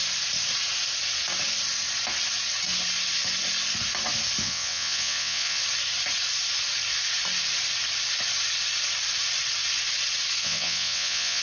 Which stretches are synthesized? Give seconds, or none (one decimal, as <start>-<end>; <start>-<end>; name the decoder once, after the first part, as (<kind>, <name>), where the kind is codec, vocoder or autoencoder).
4.4-5.6 (vocoder, WaveNeXt); 10.4-11.4

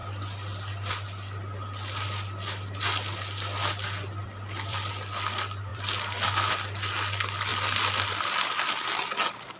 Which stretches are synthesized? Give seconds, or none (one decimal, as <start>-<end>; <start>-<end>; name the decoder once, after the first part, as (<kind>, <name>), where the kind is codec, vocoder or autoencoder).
4.2-4.9 (vocoder, BigVGAN v2); 5.7-6.5

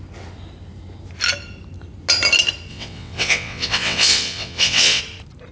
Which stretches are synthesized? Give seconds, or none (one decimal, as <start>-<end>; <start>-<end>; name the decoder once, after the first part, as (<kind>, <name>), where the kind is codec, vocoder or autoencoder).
2.7-5.0 (vocoder, WaveNeXt)